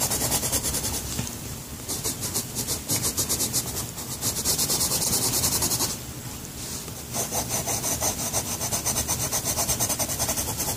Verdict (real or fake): fake